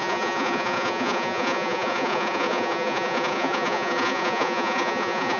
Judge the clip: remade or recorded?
remade